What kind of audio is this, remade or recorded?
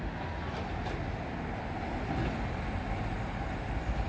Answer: recorded